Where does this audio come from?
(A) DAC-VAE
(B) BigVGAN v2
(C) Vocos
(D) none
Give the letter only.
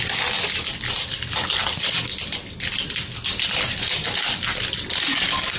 D